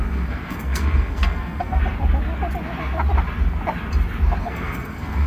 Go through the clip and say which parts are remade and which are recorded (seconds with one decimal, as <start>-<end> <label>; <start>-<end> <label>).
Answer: 0.0-1.8 remade; 1.8-4.4 recorded; 4.4-5.3 remade

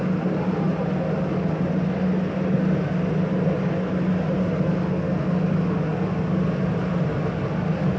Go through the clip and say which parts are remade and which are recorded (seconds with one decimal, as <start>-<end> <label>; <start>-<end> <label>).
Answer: 0.0-8.0 recorded

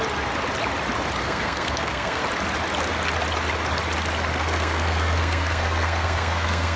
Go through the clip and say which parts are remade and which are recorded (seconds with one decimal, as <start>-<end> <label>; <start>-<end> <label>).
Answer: 0.0-1.2 recorded; 1.2-2.2 remade; 2.2-4.3 recorded; 4.3-6.8 remade

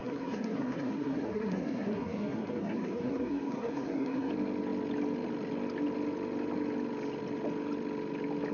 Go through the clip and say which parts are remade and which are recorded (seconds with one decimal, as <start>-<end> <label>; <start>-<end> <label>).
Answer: 0.0-4.3 remade; 4.3-8.5 recorded

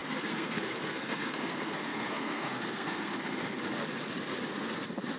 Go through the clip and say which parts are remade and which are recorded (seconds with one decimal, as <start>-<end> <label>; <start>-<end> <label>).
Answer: 0.0-3.1 remade; 3.1-5.2 recorded

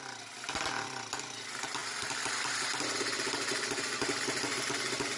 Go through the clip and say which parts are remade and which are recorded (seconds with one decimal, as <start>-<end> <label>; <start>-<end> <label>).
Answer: 0.0-5.2 recorded